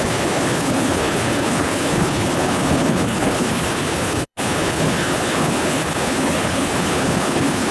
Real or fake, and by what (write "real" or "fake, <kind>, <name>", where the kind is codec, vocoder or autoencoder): fake, codec, HILCodec